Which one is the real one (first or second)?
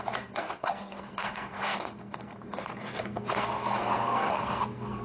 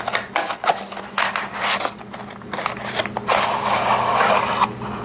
second